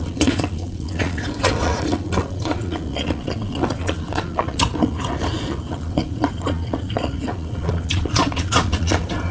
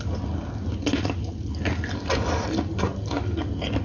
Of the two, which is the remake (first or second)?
first